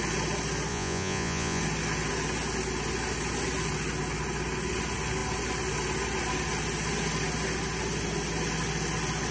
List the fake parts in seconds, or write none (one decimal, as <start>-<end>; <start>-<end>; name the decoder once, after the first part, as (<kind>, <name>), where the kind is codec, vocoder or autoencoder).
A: 0.7-1.6 (vocoder, Vocos)